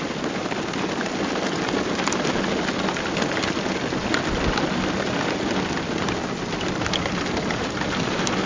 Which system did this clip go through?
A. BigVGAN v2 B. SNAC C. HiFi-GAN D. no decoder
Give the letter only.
D